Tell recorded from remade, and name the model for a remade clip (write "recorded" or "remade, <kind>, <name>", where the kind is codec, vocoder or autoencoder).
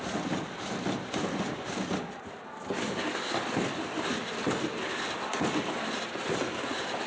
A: recorded